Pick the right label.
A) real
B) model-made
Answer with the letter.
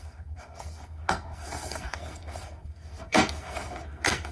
B